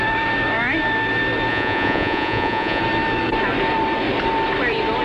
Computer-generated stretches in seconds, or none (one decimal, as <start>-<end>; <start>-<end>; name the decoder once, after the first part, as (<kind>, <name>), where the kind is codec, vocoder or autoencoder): 1.5-2.8 (vocoder, Vocos)